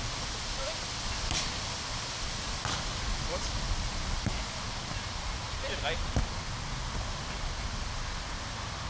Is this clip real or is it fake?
real